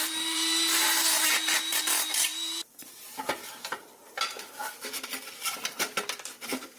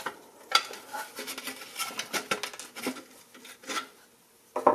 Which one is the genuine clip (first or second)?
second